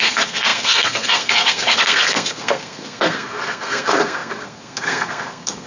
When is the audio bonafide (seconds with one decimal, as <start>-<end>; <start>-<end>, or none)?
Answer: none